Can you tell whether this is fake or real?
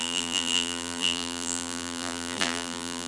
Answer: fake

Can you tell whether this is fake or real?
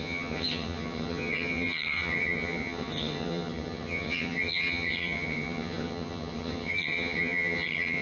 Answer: fake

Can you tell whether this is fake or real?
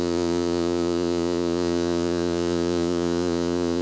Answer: fake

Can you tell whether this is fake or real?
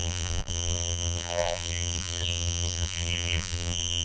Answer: fake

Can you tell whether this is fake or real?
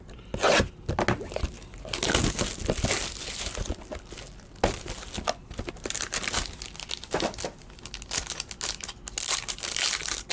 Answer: real